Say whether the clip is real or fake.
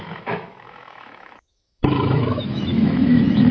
fake